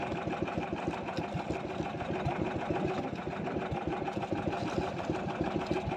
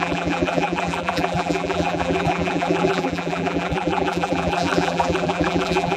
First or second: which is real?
first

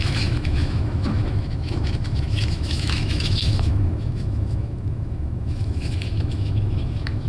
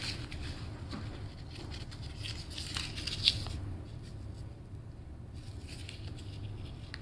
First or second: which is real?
second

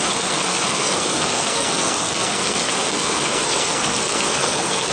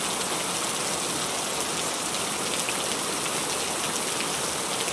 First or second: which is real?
second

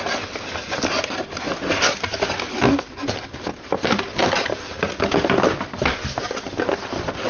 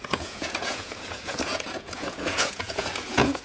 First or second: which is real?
first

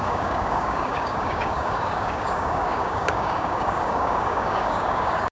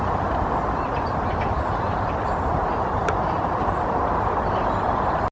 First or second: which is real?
second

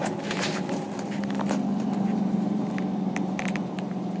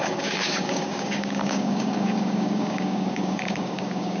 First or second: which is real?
first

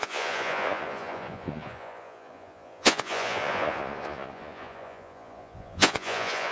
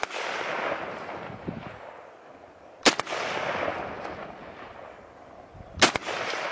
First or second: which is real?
second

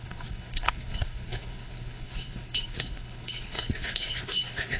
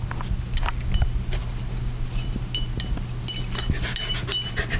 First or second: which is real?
second